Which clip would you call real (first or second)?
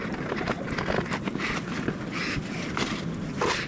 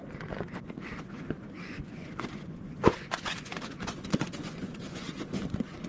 first